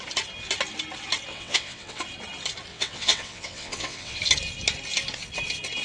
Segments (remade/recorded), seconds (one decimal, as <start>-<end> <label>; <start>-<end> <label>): 0.0-1.3 recorded; 1.3-2.0 remade; 2.0-2.7 recorded; 2.7-4.2 remade; 4.2-5.8 recorded